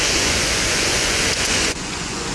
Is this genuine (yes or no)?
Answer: no